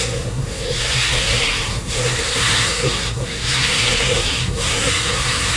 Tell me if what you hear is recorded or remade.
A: remade